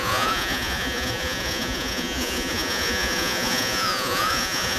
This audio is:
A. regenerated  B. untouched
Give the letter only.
A